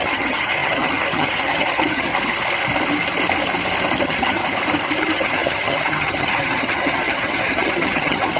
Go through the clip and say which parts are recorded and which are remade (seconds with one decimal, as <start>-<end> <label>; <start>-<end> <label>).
0.0-2.1 remade; 2.1-4.0 recorded; 4.0-4.4 remade; 4.4-5.0 recorded; 5.0-8.4 remade